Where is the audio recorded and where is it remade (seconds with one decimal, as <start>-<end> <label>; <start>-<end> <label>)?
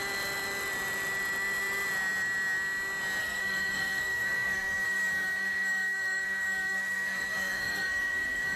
0.0-3.2 recorded; 3.2-8.6 remade